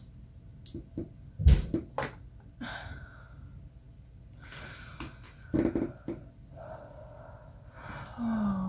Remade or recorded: recorded